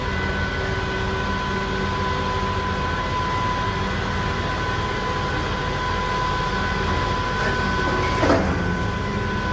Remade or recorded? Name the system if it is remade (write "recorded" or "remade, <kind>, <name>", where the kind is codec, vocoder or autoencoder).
recorded